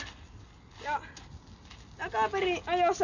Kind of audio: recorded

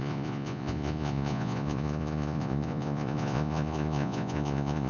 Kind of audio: remade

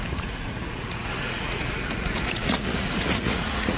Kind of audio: remade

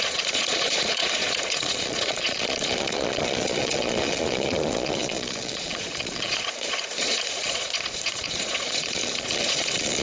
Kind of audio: remade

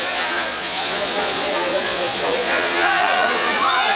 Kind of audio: remade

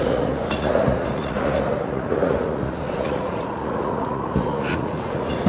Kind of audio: remade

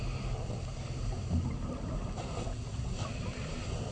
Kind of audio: recorded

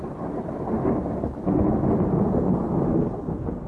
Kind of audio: recorded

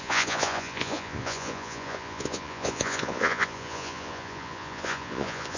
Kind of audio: remade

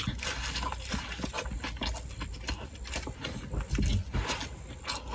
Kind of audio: recorded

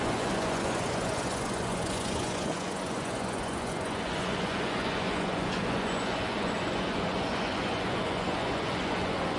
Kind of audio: remade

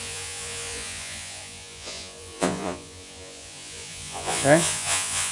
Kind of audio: remade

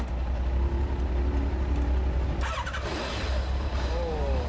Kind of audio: recorded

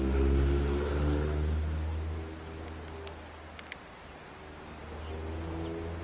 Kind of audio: recorded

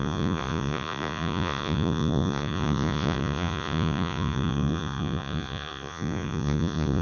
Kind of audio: remade